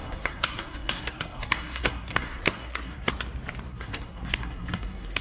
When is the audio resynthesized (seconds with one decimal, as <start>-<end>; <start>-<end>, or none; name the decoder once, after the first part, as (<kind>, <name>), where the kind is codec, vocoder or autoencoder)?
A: 0.0-3.1 (codec, SNAC); 3.7-5.2